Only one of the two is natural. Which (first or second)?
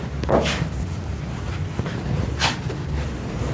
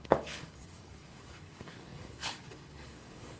first